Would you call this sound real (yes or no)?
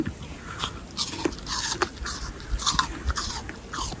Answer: yes